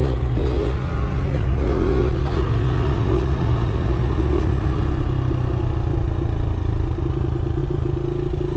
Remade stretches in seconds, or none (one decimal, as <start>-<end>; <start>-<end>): 0.0-4.8